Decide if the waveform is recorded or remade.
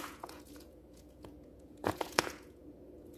remade